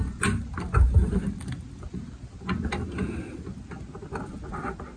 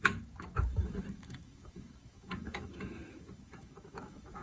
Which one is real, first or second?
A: first